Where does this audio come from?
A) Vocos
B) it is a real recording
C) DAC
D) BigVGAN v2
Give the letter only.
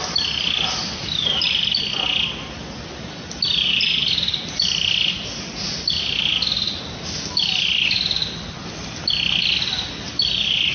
B